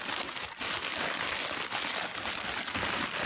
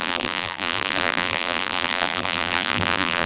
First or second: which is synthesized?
second